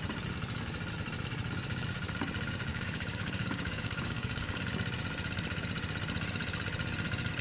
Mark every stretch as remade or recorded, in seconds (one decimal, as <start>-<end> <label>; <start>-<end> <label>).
0.0-2.7 recorded; 2.7-4.6 remade; 4.6-7.4 recorded